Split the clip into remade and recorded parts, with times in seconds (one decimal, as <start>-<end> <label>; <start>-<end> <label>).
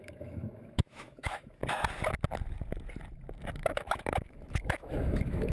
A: 0.0-1.6 remade; 1.6-3.5 recorded; 3.5-5.5 remade